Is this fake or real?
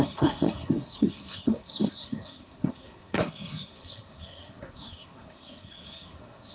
fake